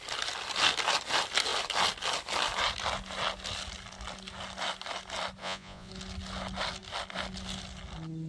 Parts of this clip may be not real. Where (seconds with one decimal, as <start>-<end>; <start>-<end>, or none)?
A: 5.4-5.9